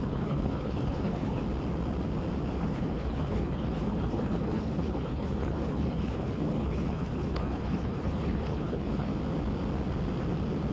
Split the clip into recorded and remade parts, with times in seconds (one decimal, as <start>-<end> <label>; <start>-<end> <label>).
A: 0.0-1.4 remade; 1.4-2.5 recorded; 2.5-9.1 remade; 9.1-10.7 recorded